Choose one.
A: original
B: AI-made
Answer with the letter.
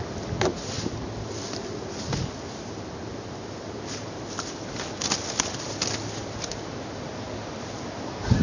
A